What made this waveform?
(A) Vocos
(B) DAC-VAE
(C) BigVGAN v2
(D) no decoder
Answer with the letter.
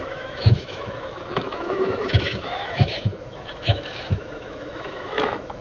B